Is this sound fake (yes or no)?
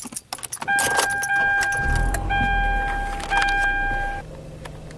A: no